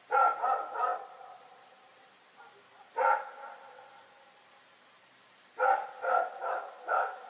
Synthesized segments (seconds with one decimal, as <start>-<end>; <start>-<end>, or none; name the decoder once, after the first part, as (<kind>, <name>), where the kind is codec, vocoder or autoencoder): 6.4-7.3 (autoencoder, DAC-VAE)